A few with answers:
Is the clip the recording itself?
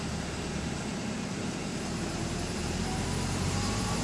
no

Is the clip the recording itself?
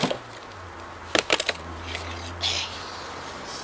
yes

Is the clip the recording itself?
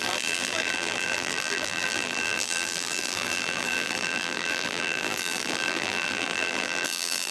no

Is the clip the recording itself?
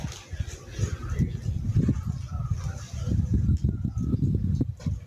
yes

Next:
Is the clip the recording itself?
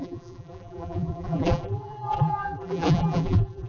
no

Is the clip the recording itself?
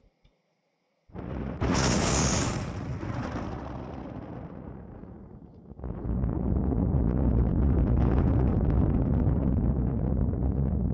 no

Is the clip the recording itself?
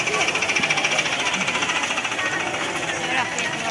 yes